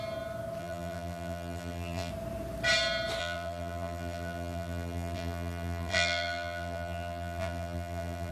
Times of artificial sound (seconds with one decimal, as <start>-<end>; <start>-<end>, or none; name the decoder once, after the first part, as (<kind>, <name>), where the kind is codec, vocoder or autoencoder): 0.6-2.1 (vocoder, BigVGAN v2); 3.2-8.3